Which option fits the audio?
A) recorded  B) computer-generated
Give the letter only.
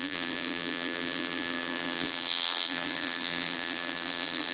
B